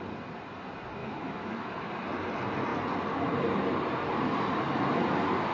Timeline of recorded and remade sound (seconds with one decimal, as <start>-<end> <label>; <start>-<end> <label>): 0.0-1.0 recorded; 1.0-1.9 remade; 1.9-5.5 recorded